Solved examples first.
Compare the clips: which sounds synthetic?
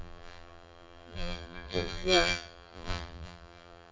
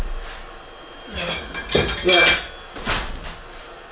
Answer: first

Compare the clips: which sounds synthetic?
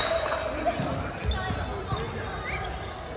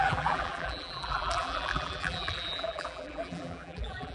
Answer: second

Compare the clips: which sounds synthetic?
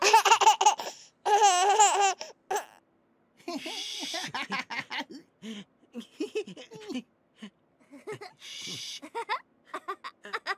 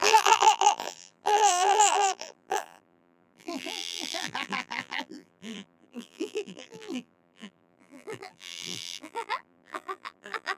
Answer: second